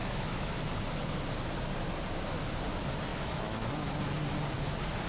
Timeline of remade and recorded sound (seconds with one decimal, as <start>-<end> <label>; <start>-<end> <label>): 0.0-0.5 remade; 0.5-3.1 recorded; 3.1-3.7 remade; 3.7-5.1 recorded